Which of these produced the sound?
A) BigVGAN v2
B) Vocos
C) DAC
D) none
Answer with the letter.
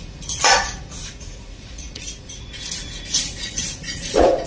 B